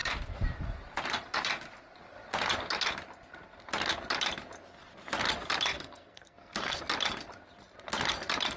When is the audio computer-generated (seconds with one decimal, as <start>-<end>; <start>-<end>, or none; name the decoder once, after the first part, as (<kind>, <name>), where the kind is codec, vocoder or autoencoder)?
5.7-6.8 (codec, SNAC)